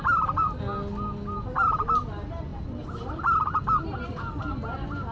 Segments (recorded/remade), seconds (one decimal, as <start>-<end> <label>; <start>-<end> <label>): 0.0-5.1 recorded